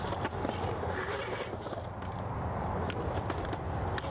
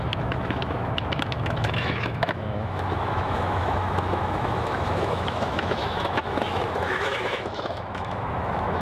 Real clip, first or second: first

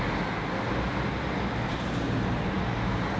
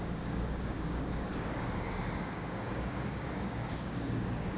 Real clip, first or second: first